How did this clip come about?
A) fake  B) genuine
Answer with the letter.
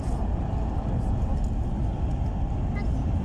B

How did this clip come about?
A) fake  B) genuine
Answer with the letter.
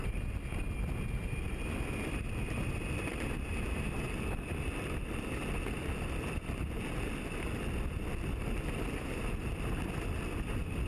B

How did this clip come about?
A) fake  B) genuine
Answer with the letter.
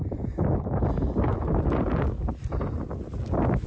B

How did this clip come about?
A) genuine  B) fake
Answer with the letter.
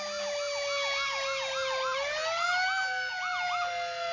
A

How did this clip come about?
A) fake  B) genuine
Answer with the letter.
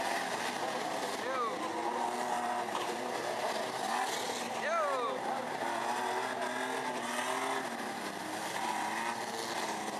B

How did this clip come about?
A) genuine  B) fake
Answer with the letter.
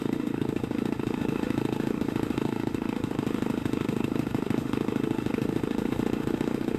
B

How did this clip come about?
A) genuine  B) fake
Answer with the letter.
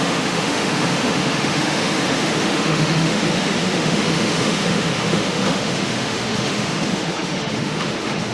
B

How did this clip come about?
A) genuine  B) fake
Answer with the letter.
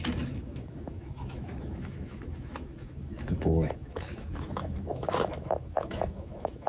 B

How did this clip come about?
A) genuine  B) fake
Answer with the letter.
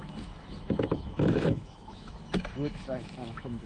B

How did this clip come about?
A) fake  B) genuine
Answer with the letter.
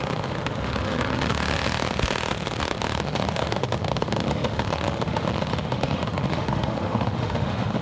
A